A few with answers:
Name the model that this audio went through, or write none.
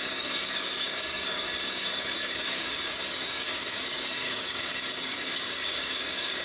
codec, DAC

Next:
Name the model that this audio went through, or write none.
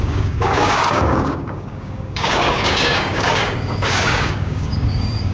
codec, DAC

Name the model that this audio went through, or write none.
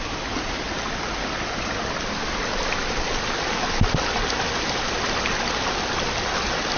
none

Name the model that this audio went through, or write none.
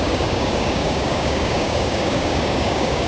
codec, DAC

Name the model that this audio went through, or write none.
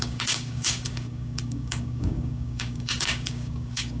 codec, DAC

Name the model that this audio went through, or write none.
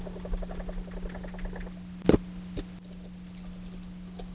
none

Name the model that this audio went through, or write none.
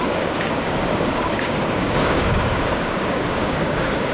codec, DAC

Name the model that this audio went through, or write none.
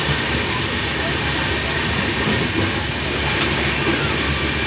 none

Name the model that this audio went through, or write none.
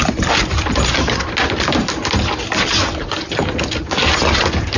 none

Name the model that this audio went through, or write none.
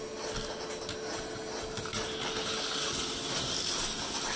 none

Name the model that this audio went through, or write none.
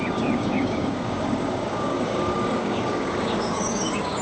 codec, DAC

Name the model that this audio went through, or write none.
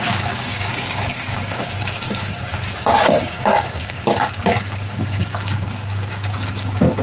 codec, DAC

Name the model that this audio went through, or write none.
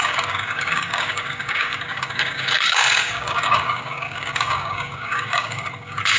codec, DAC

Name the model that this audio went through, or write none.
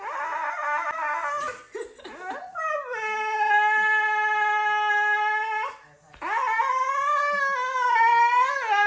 none